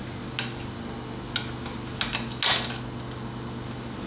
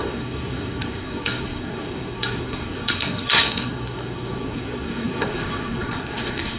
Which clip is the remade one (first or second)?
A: second